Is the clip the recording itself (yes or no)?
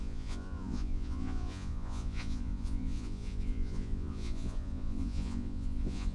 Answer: no